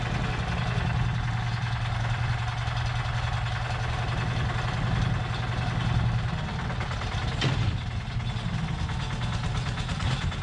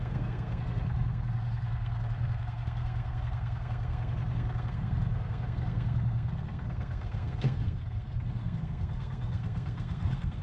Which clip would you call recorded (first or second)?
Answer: first